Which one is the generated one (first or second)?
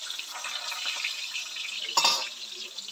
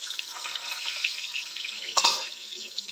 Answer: second